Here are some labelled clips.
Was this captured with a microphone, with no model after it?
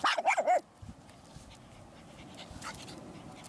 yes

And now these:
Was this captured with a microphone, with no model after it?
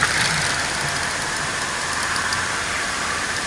yes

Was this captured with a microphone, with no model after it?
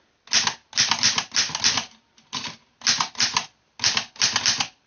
yes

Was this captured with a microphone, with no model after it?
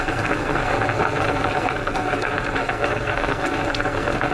no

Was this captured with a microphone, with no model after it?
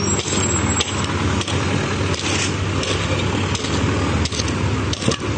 yes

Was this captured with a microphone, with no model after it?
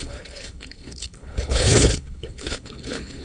no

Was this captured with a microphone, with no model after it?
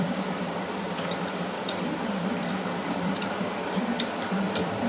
no